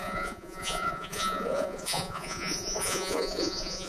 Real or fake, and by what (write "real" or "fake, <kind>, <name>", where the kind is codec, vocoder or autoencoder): fake, vocoder, Vocos